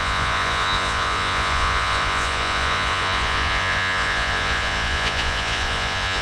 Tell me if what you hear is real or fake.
fake